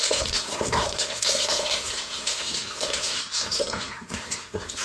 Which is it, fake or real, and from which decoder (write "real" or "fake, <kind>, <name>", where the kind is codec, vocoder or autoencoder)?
fake, codec, SNAC